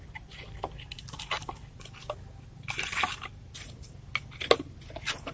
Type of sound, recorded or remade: recorded